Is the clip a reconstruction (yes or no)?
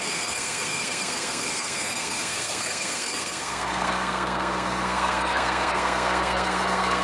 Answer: yes